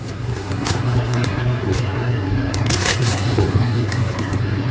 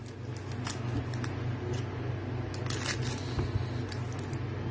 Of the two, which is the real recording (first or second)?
second